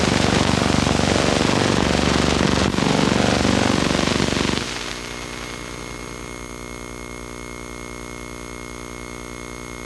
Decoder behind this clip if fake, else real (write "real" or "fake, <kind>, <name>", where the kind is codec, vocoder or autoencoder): real